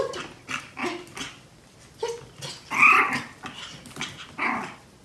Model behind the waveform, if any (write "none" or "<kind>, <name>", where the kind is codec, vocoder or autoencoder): none